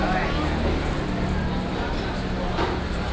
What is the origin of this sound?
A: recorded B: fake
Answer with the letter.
A